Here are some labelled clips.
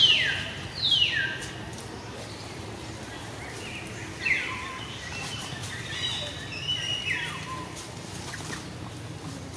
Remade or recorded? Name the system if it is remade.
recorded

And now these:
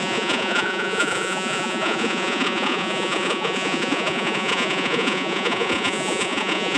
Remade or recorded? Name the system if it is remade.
remade, vocoder, Vocos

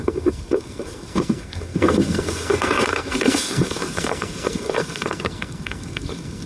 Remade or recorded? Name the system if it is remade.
remade, codec, SNAC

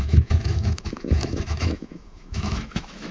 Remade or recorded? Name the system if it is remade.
remade, autoencoder, DAC-VAE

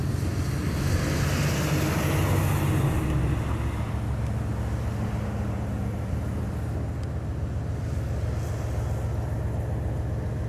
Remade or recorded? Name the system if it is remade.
recorded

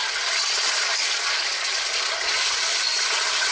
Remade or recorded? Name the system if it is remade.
remade, vocoder, Vocos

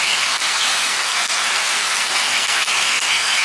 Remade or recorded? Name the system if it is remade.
remade, codec, SNAC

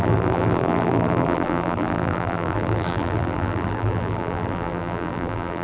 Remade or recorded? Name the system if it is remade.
remade, vocoder, BigVGAN v2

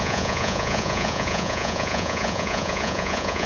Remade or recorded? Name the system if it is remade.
remade, vocoder, Vocos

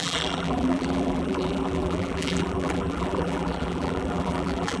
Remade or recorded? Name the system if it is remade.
remade, vocoder, BigVGAN v2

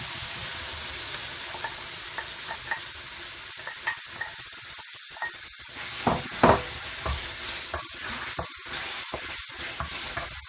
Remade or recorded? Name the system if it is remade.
recorded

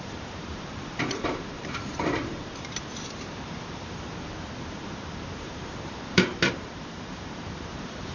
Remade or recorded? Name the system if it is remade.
remade, vocoder, BigVGAN v2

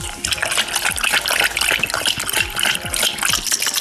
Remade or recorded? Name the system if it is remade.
recorded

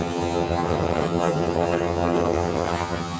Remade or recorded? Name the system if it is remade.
remade, vocoder, HiFi-GAN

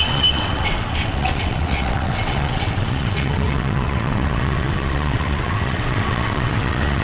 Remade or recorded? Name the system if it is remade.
remade, vocoder, WaveNeXt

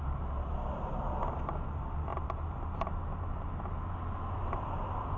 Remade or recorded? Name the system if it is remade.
recorded